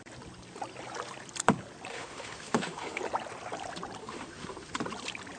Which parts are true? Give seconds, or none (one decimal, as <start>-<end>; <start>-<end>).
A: 0.0-1.9; 3.0-4.0; 4.7-5.4